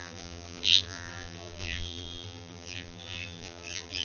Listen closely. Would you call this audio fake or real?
fake